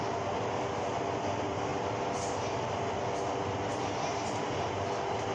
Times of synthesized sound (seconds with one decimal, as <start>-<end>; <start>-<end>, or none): none

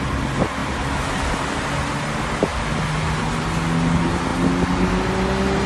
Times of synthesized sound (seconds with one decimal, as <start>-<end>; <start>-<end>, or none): none

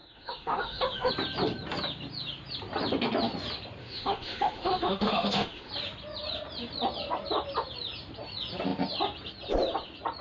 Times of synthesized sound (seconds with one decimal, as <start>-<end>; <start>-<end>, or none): 0.0-1.1; 3.8-5.7